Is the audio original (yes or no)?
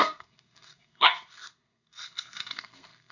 no